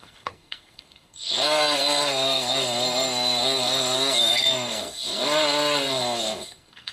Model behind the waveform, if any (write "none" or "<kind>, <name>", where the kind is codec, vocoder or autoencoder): codec, SNAC